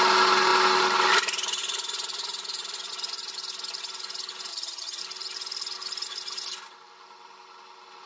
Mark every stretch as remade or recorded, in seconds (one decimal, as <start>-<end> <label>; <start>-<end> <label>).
0.0-4.5 recorded; 4.5-5.0 remade; 5.0-8.1 recorded